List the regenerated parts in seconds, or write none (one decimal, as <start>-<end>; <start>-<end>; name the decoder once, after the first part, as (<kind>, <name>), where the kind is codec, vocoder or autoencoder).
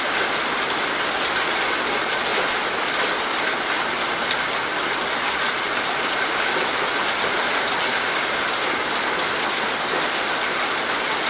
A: 7.9-8.4 (codec, DAC)